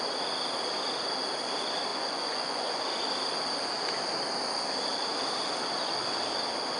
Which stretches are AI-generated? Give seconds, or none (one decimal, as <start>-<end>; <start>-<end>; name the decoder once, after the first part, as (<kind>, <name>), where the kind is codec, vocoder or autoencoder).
1.9-2.8 (vocoder, Vocos)